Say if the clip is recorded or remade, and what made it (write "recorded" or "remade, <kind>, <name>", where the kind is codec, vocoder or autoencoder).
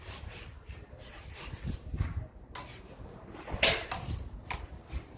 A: recorded